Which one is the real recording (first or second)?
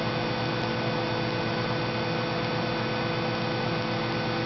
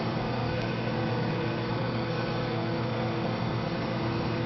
first